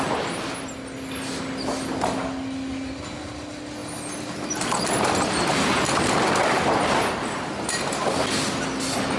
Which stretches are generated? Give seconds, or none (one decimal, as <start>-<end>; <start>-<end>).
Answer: none